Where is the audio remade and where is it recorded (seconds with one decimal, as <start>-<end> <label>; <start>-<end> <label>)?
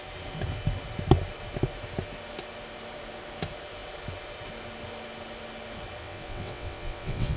0.0-6.0 recorded; 6.0-7.4 remade